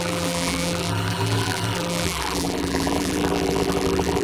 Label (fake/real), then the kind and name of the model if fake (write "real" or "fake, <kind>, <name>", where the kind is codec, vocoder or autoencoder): fake, vocoder, BigVGAN v2